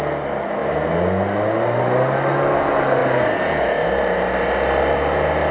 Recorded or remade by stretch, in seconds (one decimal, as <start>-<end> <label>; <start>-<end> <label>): 0.0-5.5 recorded